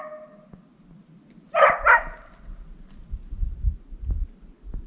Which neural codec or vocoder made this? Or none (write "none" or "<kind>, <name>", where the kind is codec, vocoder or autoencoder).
none